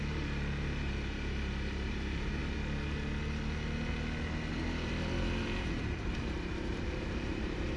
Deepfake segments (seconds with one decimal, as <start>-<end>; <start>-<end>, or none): 0.0-2.4; 4.5-7.8